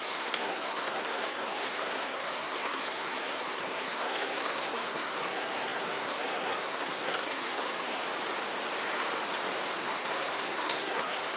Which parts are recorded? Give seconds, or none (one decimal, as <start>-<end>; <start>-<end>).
8.0-9.8

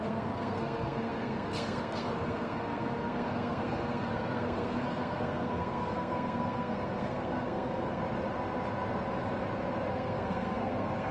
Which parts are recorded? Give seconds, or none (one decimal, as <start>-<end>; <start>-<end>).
8.0-9.9

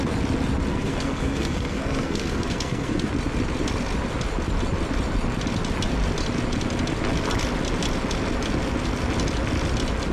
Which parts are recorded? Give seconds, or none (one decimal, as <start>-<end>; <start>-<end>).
0.0-0.7; 3.1-10.1

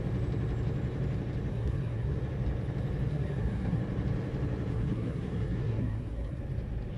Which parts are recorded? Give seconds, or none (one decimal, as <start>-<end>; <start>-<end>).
0.0-1.5; 2.2-3.1; 3.8-4.7; 6.4-7.0

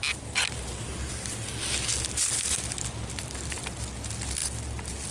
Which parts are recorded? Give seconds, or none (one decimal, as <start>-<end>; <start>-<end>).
0.0-5.1